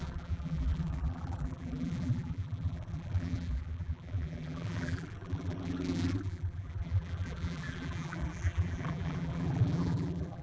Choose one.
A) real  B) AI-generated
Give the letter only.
B